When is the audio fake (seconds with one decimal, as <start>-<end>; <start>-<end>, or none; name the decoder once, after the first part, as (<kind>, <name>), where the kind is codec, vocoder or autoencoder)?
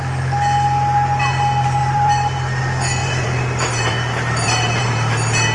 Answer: 1.8-2.6 (vocoder, BigVGAN v2); 3.0-4.9